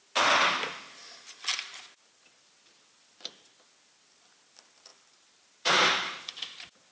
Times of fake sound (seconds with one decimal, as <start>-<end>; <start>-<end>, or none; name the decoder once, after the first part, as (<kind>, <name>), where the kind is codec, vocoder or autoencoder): 4.9-6.2 (vocoder, BigVGAN v2)